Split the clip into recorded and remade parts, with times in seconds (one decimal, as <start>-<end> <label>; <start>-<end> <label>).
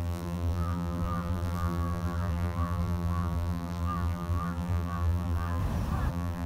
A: 0.0-5.6 remade; 5.6-6.1 recorded; 6.1-6.5 remade